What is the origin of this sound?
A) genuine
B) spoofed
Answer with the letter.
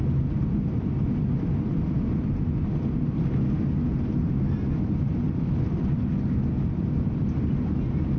A